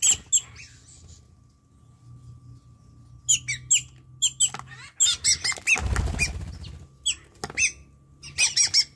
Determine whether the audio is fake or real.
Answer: real